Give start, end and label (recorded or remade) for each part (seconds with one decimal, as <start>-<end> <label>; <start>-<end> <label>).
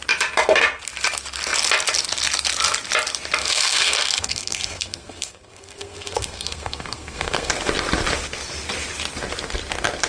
0.0-3.4 recorded; 3.4-7.5 remade; 7.5-10.1 recorded